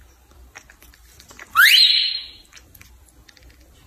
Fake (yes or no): yes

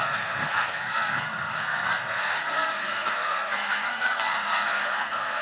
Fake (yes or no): yes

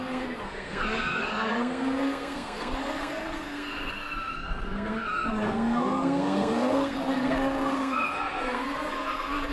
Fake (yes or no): yes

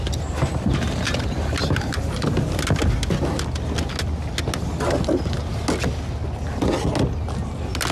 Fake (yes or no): no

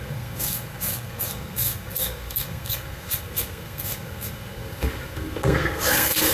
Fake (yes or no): yes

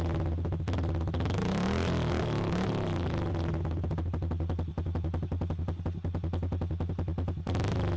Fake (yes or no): no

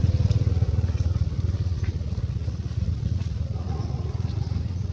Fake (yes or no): yes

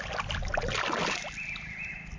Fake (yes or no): no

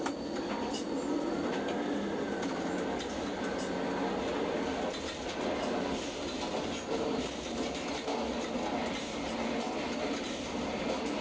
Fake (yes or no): no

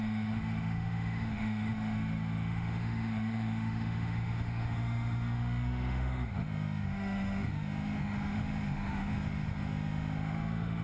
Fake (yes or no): yes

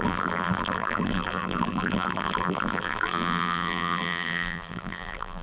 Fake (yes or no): yes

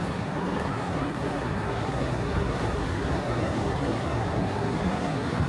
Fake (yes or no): yes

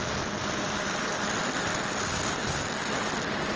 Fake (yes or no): no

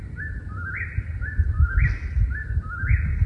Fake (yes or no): no